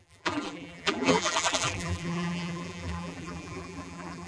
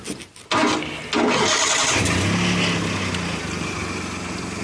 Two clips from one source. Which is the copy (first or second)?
first